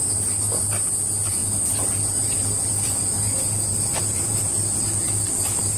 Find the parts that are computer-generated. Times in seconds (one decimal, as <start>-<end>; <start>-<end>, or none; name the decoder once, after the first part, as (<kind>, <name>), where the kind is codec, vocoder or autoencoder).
none